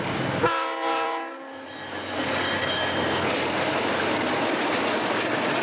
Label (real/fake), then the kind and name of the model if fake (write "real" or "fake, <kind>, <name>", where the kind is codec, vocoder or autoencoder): real